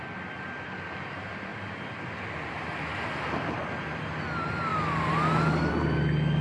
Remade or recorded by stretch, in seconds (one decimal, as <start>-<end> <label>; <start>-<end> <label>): 0.0-6.4 recorded